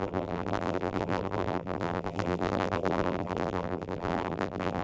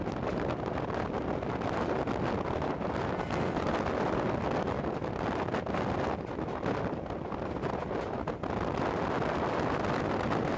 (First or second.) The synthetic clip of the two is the first